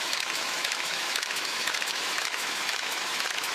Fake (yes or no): yes